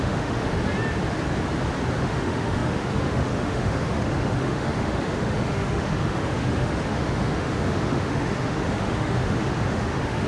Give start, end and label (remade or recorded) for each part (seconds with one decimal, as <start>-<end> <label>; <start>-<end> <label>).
0.0-0.6 remade; 0.6-2.0 recorded; 2.0-10.3 remade